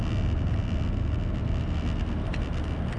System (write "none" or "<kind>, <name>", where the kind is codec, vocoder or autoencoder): none